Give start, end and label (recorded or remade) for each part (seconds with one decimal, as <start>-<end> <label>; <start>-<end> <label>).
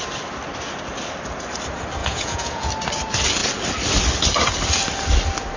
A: 0.0-2.0 recorded; 2.0-2.7 remade; 2.7-5.6 recorded